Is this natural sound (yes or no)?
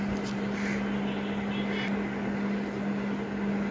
yes